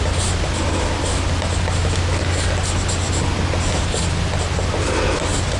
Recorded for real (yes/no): yes